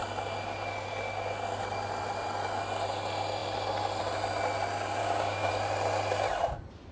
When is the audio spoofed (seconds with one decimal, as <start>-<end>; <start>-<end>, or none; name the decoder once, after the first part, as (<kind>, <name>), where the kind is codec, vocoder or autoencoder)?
5.0-5.5 (codec, DAC)